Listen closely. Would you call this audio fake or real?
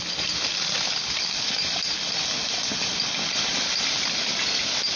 real